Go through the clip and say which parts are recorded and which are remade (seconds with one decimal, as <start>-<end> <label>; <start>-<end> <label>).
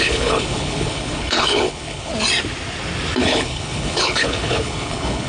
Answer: 0.0-2.1 remade; 2.1-3.2 recorded; 3.2-5.3 remade